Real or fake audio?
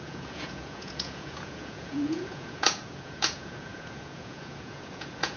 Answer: fake